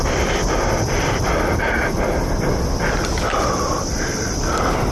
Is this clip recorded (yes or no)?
no